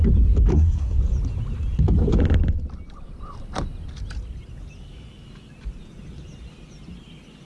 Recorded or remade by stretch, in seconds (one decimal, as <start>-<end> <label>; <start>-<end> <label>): 0.0-0.5 recorded; 0.5-1.0 remade; 1.0-7.4 recorded